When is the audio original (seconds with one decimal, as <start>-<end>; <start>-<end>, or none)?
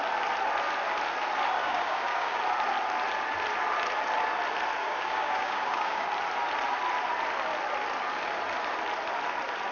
0.0-1.6; 2.4-4.8; 6.1-9.7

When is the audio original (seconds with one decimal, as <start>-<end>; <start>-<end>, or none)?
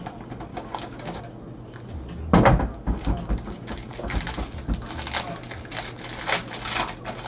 0.0-0.5; 1.2-2.7; 4.2-7.3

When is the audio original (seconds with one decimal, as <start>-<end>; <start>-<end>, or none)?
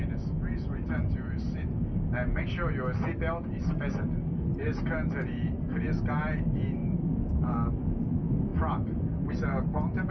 0.0-6.8; 7.7-10.1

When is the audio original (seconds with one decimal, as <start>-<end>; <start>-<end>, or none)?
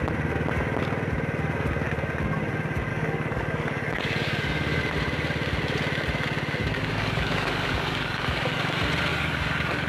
0.0-2.9; 4.8-6.6; 8.6-9.1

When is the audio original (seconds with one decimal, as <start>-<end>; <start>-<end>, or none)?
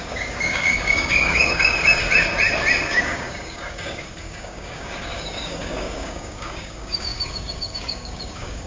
2.0-2.8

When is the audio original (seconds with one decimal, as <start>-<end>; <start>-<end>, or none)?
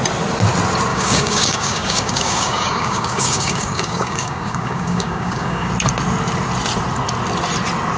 0.0-0.9; 5.7-8.0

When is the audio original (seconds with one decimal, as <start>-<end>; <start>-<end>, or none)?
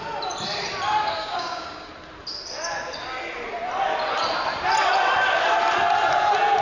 0.0-1.2; 1.9-6.6